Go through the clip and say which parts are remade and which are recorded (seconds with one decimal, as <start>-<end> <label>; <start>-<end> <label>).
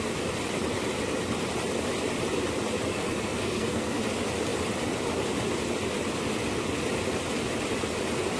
0.0-2.9 recorded; 2.9-4.0 remade; 4.0-8.4 recorded